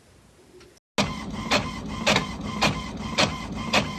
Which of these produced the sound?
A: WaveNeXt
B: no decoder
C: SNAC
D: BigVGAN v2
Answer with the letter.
B